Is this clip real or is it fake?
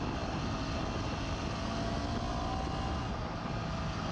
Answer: real